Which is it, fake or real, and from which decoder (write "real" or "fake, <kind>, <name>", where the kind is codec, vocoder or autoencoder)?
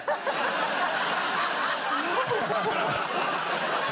real